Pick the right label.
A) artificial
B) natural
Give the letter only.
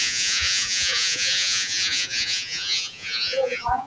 A